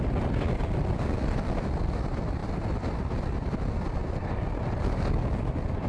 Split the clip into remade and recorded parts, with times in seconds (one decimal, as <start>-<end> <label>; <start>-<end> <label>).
0.0-5.9 recorded